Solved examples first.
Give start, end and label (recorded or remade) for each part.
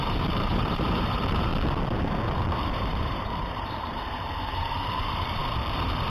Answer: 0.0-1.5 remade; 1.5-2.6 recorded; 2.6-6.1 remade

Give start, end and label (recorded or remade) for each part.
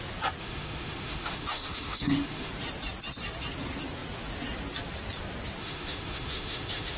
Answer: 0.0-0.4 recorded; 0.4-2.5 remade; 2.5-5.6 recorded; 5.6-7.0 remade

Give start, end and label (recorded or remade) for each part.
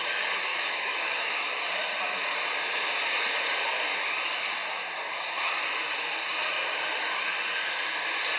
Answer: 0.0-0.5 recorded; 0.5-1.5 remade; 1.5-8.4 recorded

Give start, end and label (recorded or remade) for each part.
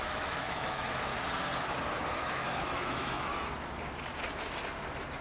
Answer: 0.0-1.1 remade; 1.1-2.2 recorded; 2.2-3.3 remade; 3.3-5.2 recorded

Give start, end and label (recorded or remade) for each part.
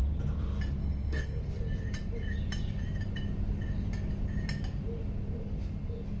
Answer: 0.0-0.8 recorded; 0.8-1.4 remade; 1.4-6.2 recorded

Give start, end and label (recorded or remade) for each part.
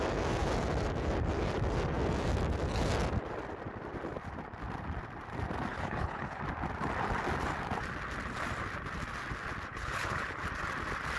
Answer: 0.0-5.7 recorded; 5.7-6.4 remade; 6.4-9.7 recorded; 9.7-10.4 remade; 10.4-11.2 recorded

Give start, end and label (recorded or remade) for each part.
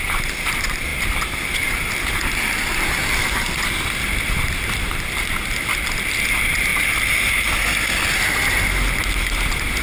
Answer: 0.0-0.9 recorded; 0.9-5.1 remade; 5.1-9.8 recorded